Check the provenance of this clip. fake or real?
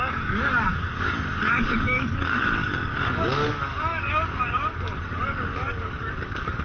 fake